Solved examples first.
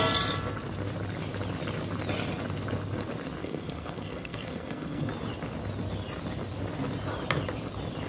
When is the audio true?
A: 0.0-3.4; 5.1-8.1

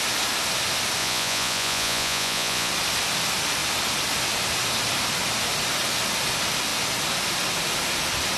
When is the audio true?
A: 0.0-1.0; 2.7-8.4

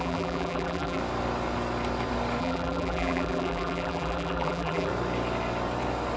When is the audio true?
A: 1.0-2.4; 4.9-6.2